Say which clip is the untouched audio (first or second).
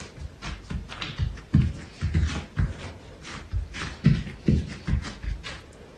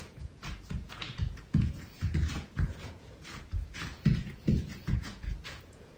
first